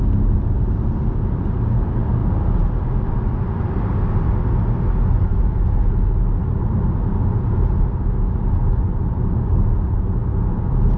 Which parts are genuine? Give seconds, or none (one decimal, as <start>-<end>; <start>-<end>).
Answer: 0.0-11.0